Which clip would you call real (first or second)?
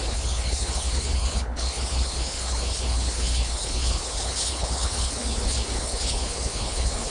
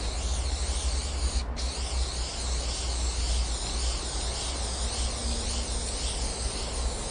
second